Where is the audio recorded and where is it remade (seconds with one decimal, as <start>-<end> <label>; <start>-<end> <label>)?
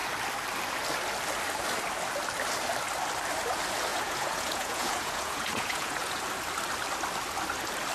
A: 0.0-3.9 recorded; 3.9-6.2 remade; 6.2-7.9 recorded